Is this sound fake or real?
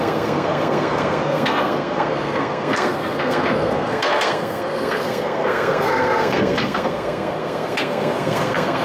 fake